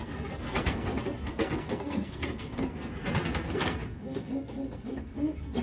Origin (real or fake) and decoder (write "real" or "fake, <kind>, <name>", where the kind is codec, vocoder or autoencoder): fake, codec, SNAC